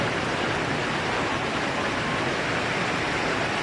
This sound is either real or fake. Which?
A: real